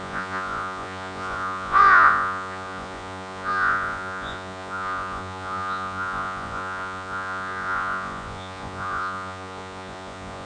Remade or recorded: remade